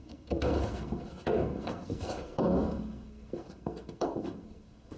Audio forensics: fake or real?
fake